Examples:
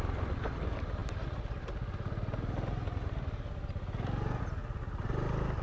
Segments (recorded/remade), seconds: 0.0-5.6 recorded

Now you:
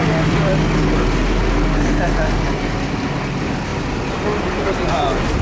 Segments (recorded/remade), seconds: 0.0-0.5 remade; 0.5-3.3 recorded; 3.3-3.7 remade; 3.7-4.7 recorded; 4.7-5.4 remade

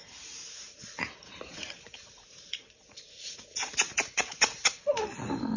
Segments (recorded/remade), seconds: 0.0-1.1 remade; 1.1-1.5 recorded; 1.5-4.9 remade; 4.9-5.6 recorded

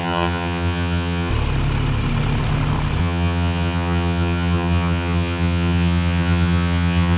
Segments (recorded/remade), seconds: 0.0-1.3 remade; 1.3-3.0 recorded; 3.0-7.2 remade

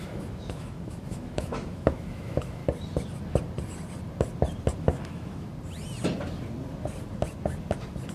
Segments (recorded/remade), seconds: 0.0-2.6 remade; 2.6-4.8 recorded; 4.8-5.5 remade; 5.5-8.1 recorded

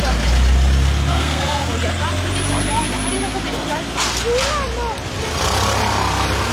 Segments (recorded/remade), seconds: 0.0-1.1 recorded; 1.1-1.7 remade; 1.7-6.5 recorded

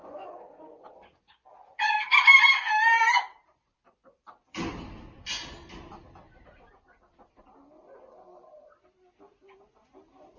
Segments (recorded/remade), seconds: 0.0-0.9 remade; 0.9-10.4 recorded